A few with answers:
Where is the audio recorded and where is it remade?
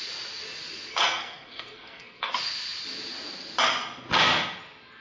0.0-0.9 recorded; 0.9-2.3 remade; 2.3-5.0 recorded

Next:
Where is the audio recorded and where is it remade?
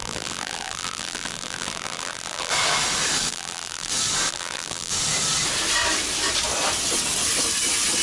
0.0-2.5 remade; 2.5-3.3 recorded; 3.3-3.9 remade; 3.9-4.3 recorded; 4.3-4.9 remade; 4.9-8.0 recorded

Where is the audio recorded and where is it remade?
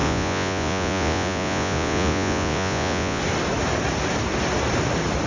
0.0-3.2 remade; 3.2-5.3 recorded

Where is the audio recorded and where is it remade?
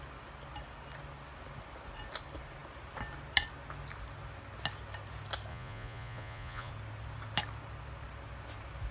0.0-5.5 recorded; 5.5-6.7 remade; 6.7-8.9 recorded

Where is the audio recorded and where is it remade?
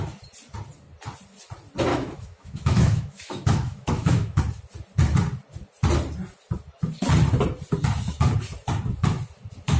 0.0-1.9 recorded; 1.9-4.4 remade; 4.4-9.8 recorded